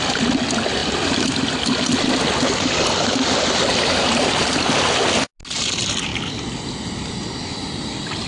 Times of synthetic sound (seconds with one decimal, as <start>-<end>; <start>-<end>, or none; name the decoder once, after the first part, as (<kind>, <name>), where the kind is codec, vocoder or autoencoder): none